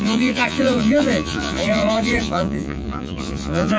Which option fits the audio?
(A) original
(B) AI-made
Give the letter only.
B